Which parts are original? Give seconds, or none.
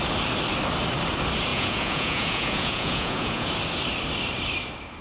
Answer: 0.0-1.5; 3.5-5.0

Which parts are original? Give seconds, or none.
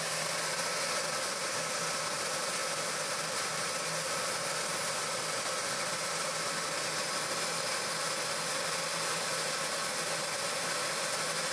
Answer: 0.0-11.5